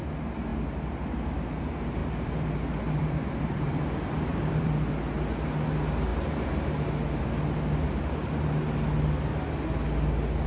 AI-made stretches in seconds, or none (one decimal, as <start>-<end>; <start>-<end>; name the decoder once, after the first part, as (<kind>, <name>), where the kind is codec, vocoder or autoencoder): 2.0-4.9 (vocoder, BigVGAN v2)